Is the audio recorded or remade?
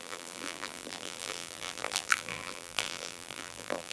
remade